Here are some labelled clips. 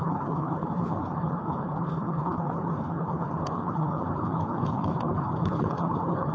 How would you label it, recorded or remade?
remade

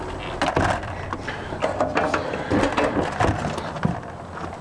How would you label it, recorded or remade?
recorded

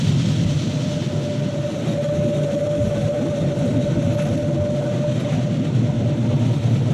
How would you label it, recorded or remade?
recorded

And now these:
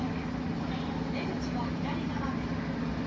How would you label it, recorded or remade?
recorded